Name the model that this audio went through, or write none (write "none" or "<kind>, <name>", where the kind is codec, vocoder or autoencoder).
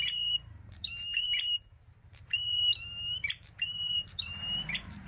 vocoder, BigVGAN v2